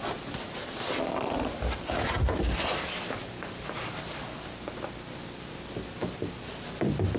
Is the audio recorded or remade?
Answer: recorded